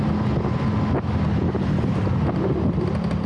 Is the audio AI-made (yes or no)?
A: no